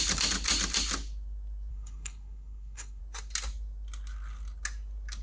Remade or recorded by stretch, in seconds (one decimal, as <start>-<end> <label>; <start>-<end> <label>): 0.0-1.7 recorded; 1.7-3.0 remade; 3.0-5.2 recorded